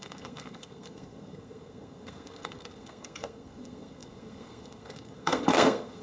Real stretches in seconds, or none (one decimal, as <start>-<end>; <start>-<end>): none